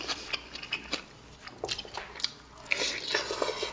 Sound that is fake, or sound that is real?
real